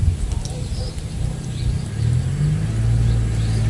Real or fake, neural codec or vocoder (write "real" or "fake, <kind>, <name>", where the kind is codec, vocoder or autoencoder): real